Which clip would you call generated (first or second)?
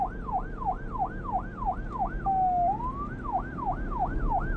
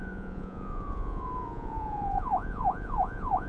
second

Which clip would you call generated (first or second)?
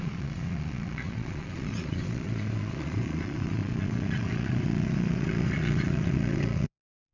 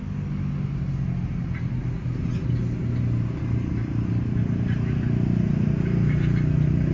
first